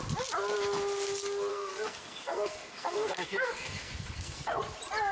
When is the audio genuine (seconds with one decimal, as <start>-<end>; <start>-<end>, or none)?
0.0-1.5; 4.6-5.1